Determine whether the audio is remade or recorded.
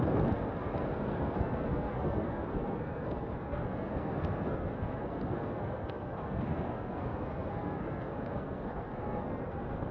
remade